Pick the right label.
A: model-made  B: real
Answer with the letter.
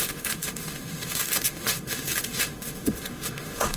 A